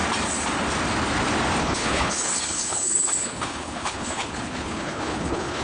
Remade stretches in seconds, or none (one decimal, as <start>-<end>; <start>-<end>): 1.6-5.6